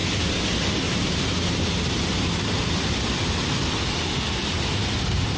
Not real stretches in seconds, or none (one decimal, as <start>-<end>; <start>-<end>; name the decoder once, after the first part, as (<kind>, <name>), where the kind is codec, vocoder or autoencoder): none